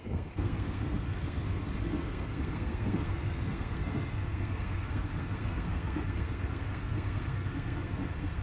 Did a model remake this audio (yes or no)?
yes